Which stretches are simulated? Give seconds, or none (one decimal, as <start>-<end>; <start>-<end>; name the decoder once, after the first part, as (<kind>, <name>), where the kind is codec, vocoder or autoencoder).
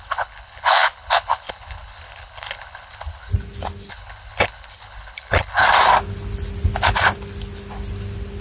0.0-3.3 (codec, HILCodec); 3.9-5.6